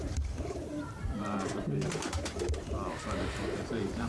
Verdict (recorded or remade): remade